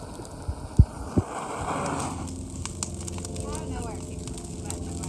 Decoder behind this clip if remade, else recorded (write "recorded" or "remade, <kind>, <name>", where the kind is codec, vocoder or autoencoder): recorded